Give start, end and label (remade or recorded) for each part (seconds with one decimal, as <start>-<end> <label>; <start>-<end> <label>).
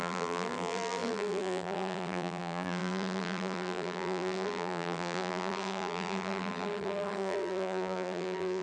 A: 0.0-8.6 remade